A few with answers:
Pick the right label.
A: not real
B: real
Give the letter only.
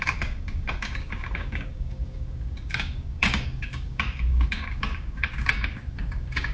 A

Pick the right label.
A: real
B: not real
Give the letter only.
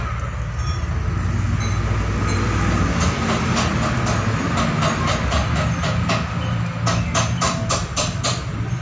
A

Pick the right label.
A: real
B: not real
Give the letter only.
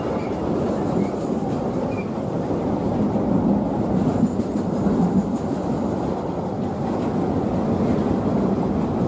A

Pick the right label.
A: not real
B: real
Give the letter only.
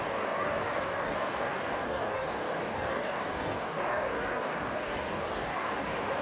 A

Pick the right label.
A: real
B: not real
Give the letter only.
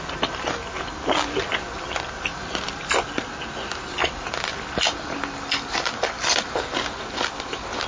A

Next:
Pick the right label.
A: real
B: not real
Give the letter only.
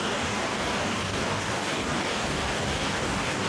B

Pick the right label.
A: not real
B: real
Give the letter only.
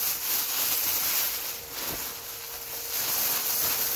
B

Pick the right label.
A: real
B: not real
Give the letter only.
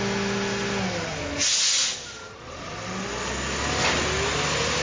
A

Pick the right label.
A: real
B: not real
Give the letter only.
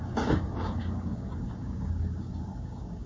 B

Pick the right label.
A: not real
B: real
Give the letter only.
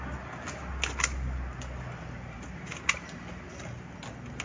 B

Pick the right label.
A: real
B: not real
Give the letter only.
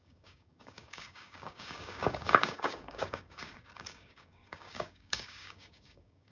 B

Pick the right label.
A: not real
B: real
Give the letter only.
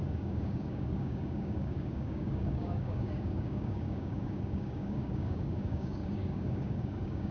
A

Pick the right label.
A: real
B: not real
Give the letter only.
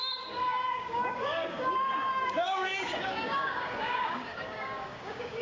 B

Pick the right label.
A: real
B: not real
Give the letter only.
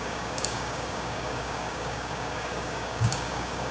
B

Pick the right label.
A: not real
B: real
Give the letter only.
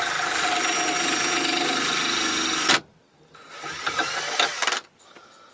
B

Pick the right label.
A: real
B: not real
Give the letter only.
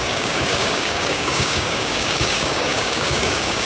B